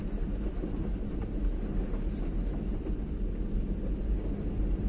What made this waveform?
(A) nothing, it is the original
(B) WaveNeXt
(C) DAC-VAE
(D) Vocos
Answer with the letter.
A